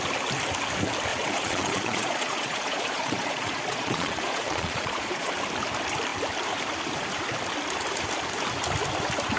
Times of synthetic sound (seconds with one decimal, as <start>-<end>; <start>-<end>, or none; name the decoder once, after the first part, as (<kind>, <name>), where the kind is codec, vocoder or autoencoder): 1.1-5.3 (vocoder, Vocos)